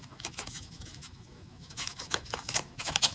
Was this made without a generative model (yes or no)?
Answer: no